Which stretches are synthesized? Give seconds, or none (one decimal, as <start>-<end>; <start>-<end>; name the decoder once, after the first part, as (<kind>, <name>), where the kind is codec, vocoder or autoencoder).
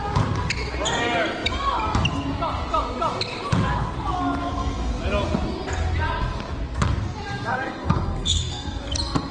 4.4-4.9 (codec, SNAC); 7.5-8.8